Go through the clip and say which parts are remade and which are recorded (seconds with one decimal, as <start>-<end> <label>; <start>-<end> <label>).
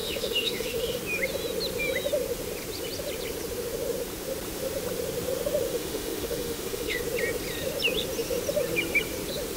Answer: 0.0-1.0 remade; 1.0-5.7 recorded; 5.7-7.0 remade; 7.0-9.6 recorded